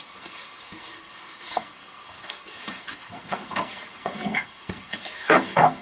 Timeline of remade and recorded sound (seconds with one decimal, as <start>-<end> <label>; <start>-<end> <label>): 0.0-5.8 remade